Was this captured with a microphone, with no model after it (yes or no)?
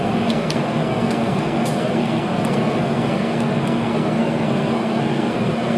no